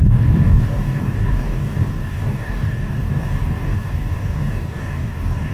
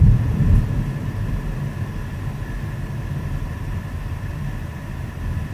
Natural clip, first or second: second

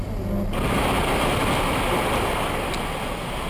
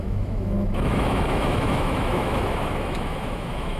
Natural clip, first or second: first